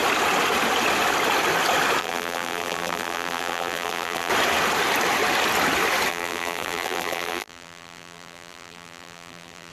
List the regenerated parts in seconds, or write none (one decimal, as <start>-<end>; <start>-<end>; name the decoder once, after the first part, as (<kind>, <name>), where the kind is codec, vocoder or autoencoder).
2.0-4.3 (vocoder, BigVGAN v2); 6.1-9.7

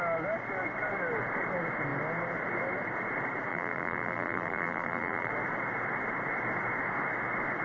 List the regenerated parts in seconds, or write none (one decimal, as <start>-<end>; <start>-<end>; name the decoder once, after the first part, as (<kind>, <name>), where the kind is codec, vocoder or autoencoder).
3.5-5.3 (vocoder, BigVGAN v2)

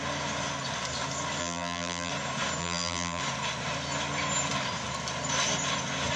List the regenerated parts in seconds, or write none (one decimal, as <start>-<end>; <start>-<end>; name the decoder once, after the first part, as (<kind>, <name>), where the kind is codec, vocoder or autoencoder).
1.4-2.1 (vocoder, BigVGAN v2); 2.6-3.2